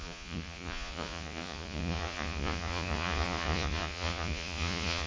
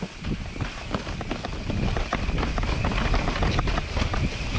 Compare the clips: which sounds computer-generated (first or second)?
first